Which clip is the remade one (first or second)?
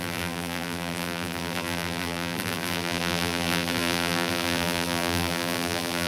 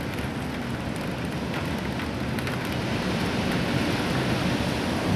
first